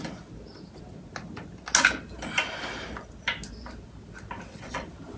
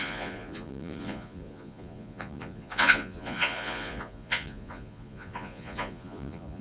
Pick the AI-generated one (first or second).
second